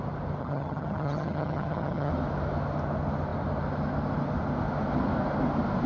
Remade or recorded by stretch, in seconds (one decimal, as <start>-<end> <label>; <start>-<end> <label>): 0.0-0.4 recorded; 0.4-2.1 remade; 2.1-5.9 recorded